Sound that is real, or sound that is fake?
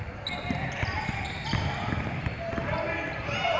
real